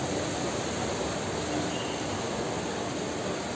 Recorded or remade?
recorded